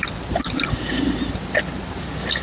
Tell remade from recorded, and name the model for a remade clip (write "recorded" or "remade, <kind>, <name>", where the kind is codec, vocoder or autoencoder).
remade, vocoder, BigVGAN v2